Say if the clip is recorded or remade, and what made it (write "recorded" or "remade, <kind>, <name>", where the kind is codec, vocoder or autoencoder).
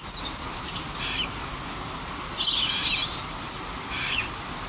recorded